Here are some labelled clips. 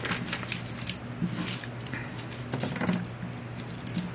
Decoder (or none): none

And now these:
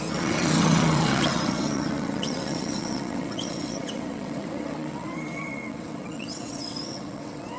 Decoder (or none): vocoder, WaveNeXt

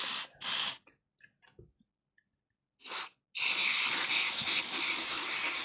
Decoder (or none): none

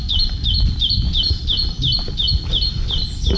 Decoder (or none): none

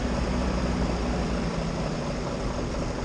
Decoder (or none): none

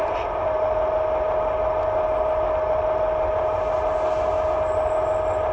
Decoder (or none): none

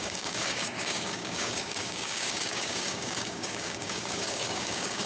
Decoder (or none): codec, DAC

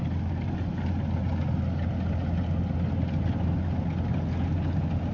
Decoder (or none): none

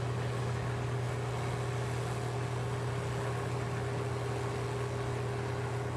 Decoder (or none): none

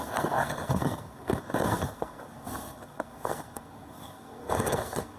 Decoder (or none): codec, SNAC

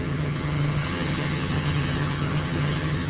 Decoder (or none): vocoder, HiFi-GAN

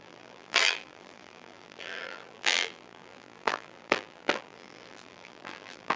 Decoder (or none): vocoder, BigVGAN v2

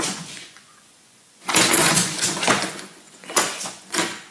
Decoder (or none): vocoder, Vocos